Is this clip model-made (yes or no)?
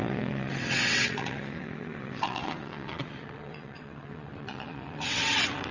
yes